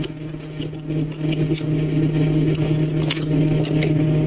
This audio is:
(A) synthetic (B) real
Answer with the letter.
B